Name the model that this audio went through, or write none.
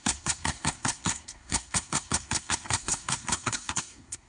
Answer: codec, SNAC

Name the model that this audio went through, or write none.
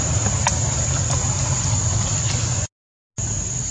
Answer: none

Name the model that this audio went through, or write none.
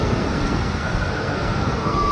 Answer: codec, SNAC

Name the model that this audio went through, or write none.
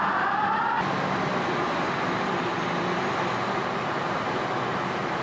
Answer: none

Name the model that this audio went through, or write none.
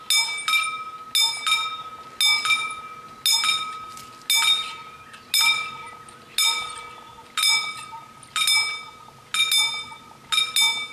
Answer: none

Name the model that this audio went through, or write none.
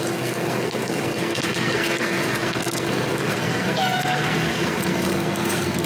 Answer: codec, SNAC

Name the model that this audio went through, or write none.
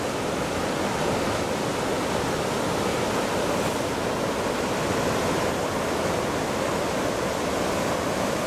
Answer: none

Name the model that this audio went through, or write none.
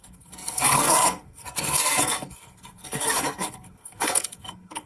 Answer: codec, SNAC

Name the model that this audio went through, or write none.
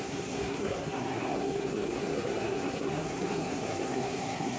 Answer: codec, SNAC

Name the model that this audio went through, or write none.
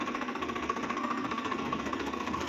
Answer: codec, SNAC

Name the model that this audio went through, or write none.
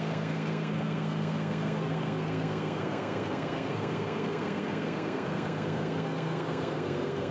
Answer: codec, SNAC